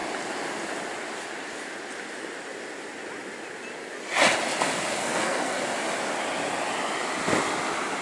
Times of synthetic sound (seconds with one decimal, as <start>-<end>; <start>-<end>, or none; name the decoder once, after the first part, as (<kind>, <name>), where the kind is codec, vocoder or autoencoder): 5.0-5.6 (codec, SNAC)